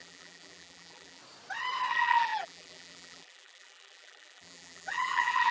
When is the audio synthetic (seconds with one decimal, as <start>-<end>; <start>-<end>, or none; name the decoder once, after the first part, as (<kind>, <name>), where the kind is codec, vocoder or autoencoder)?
0.0-1.2 (vocoder, BigVGAN v2); 1.9-5.5